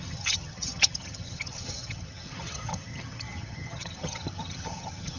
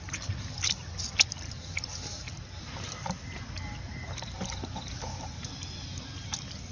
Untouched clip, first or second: second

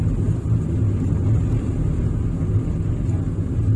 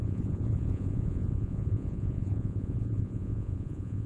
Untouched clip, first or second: first